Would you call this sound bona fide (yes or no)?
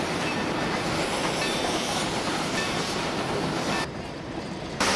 no